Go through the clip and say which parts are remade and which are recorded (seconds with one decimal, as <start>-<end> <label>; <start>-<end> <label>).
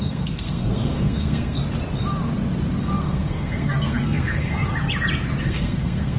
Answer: 0.0-1.6 remade; 1.6-2.8 recorded; 2.8-4.7 remade; 4.7-5.4 recorded; 5.4-6.2 remade